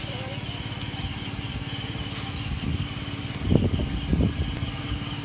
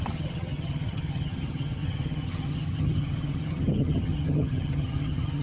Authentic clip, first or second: first